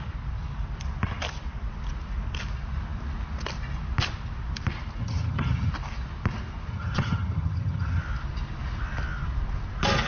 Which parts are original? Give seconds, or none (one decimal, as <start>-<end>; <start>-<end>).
0.0-5.0; 5.7-6.7; 8.0-10.1